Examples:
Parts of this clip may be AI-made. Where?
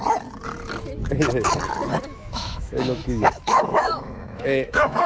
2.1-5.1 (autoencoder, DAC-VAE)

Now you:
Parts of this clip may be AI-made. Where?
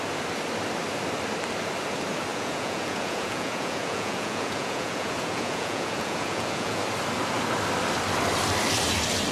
2.3-6.8 (vocoder, Vocos)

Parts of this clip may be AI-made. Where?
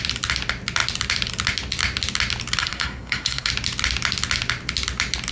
2.6-3.5 (codec, SNAC)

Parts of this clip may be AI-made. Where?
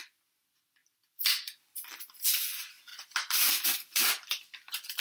2.9-5.0 (vocoder, BigVGAN v2)